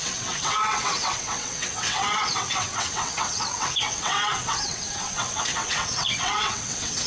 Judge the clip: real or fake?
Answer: fake